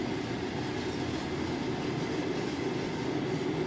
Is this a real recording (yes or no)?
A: yes